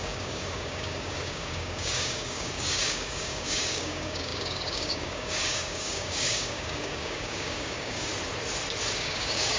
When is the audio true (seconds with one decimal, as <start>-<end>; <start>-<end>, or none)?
8.1-8.9